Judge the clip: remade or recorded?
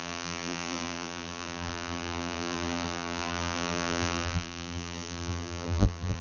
remade